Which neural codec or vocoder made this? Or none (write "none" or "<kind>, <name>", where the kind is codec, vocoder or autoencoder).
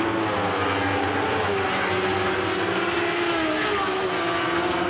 none